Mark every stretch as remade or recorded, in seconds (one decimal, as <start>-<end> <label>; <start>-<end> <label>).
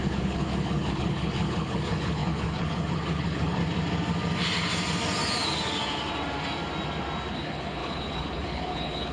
0.0-3.6 remade; 3.6-7.3 recorded; 7.3-9.1 remade